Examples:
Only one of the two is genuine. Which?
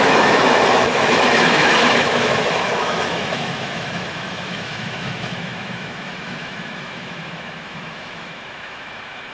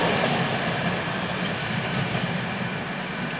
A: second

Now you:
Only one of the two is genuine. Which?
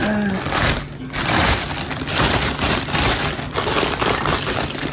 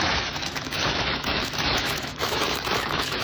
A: first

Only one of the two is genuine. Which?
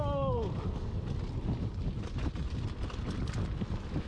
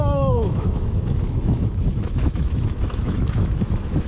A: first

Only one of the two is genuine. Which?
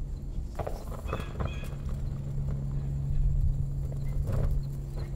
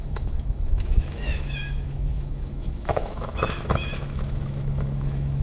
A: first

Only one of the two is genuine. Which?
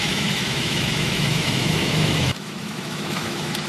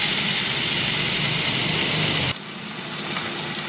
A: second